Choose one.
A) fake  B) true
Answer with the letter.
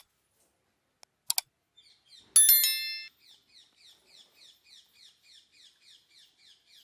B